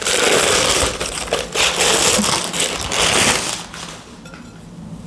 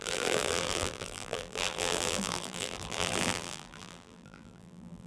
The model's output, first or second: second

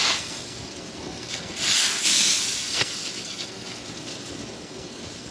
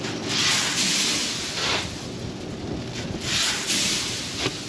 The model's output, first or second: first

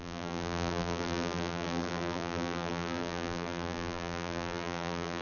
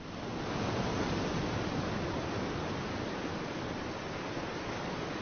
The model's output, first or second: first